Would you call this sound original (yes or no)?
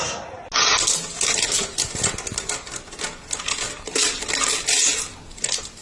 yes